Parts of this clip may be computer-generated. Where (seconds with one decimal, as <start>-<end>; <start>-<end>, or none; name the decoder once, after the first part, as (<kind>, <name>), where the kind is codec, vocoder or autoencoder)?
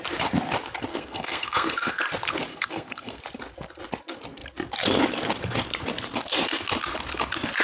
0.9-2.0 (codec, SNAC); 2.5-3.2